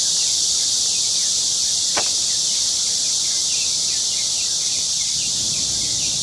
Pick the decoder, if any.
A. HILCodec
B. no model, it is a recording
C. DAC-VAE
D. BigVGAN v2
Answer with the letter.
B